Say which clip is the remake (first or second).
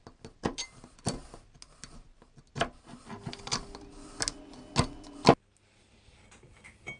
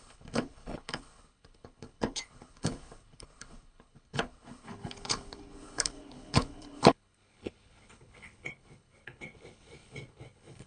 second